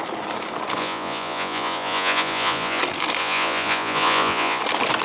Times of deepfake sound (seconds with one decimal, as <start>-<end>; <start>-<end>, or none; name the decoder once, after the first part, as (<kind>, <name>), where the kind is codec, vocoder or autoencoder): 0.8-2.8 (vocoder, Vocos); 3.2-4.6